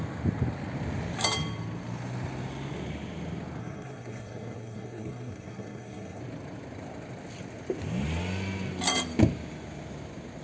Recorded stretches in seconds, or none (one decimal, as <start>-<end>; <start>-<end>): 0.0-3.6; 6.2-10.4